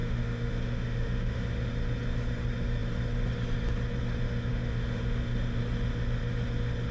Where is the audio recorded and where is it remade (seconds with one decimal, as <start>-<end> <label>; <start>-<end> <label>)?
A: 0.0-1.4 remade; 1.4-4.5 recorded; 4.5-5.6 remade; 5.6-6.9 recorded